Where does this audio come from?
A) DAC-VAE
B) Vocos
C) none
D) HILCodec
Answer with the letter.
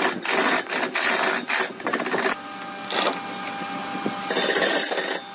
C